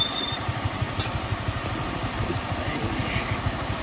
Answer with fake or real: real